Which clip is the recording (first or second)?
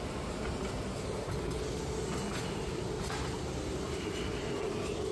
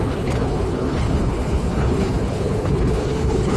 first